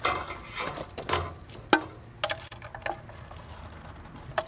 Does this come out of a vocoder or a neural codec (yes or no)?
no